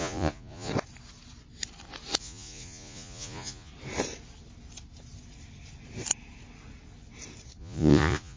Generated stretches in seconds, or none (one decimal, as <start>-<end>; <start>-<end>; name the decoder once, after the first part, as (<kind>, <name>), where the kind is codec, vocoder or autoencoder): 0.0-0.7 (vocoder, Vocos); 2.2-3.7; 7.6-8.4